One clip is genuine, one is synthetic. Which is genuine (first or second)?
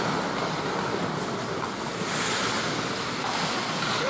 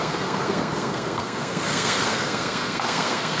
first